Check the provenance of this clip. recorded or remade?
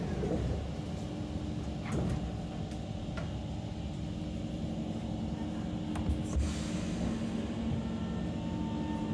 recorded